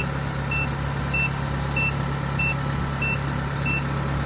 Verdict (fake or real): real